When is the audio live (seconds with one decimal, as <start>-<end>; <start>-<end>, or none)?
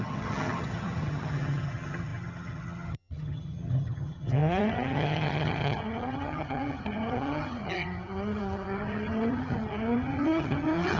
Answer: none